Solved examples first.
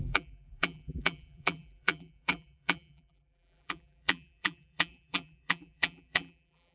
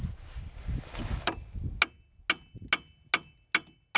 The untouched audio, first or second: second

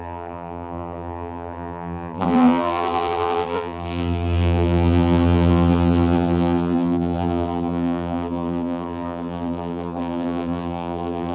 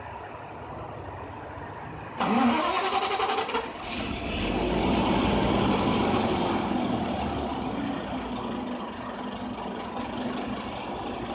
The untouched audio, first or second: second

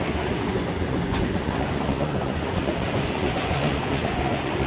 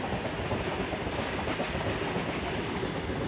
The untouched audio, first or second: second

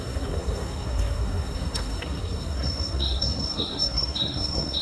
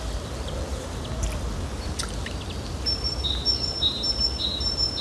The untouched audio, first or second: second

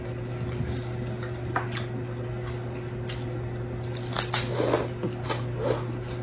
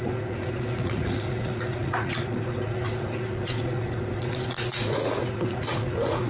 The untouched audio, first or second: first